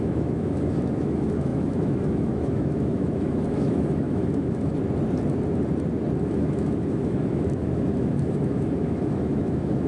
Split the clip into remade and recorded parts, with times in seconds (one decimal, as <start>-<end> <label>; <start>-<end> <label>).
0.0-4.7 remade; 4.7-6.2 recorded; 6.2-9.9 remade